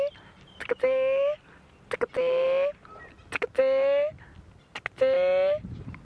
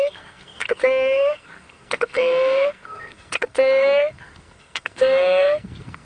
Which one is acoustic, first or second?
first